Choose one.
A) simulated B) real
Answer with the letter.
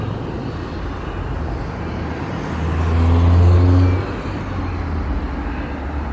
B